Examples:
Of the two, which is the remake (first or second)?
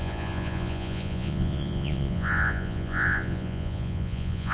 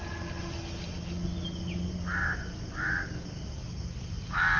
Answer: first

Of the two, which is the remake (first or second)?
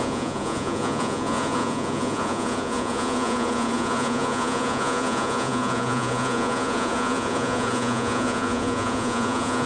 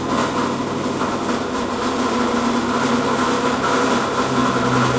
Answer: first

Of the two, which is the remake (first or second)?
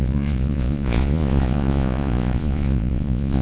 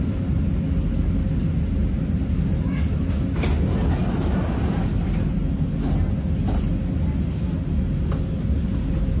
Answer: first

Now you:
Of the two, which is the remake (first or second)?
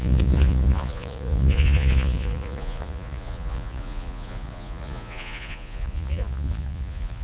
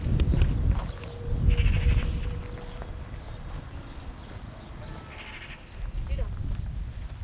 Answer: first